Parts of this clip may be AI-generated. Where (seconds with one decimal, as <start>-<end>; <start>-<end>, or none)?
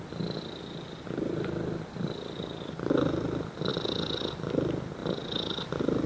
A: none